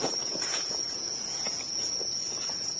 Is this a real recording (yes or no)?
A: no